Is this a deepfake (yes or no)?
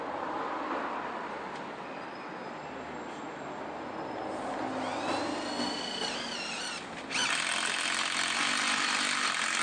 no